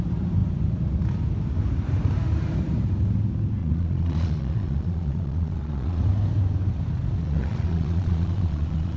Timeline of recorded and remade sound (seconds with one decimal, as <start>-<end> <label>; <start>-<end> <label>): 0.0-3.6 recorded; 3.6-6.0 remade; 6.0-7.2 recorded; 7.2-9.0 remade